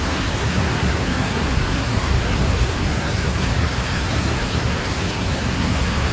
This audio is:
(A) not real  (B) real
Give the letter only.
A